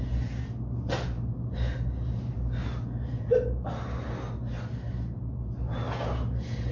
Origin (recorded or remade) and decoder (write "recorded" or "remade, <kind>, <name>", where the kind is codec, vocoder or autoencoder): recorded